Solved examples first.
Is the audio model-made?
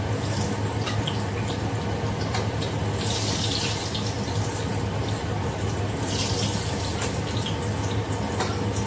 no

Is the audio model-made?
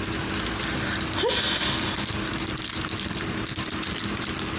yes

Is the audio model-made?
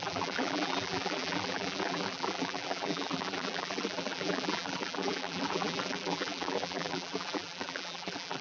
yes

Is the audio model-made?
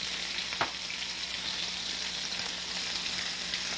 no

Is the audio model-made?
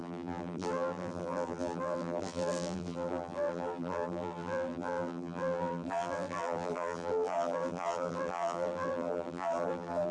yes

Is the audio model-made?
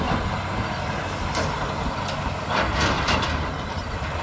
no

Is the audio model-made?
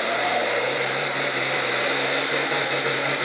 yes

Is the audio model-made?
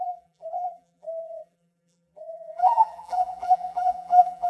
yes